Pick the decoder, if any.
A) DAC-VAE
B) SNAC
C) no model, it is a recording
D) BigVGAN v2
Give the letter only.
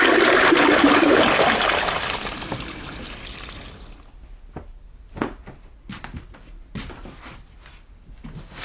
C